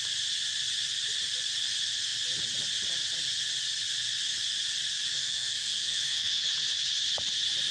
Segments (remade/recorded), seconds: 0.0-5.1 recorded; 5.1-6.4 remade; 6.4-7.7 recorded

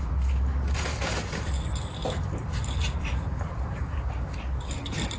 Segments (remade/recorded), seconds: 0.0-0.9 recorded; 0.9-4.0 remade; 4.0-5.2 recorded

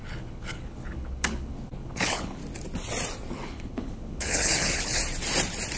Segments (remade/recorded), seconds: 0.0-2.4 remade; 2.4-3.3 recorded; 3.3-5.0 remade; 5.0-5.8 recorded

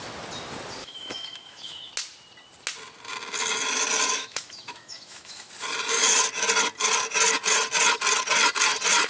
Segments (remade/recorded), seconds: 0.0-0.8 recorded; 0.8-1.9 remade; 1.9-4.1 recorded; 4.1-5.5 remade; 5.5-9.1 recorded

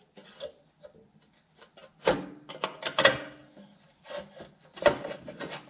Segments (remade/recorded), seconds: 0.0-5.7 recorded

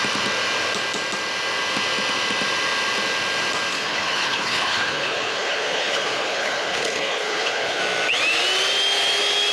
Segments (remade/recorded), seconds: 0.0-3.7 recorded; 3.7-7.8 remade; 7.8-9.5 recorded